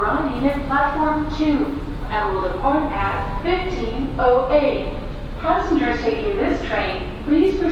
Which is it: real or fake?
real